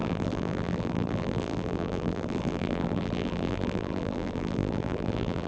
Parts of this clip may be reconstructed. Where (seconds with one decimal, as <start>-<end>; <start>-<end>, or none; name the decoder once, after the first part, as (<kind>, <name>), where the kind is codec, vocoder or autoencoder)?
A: 0.0-5.5 (vocoder, BigVGAN v2)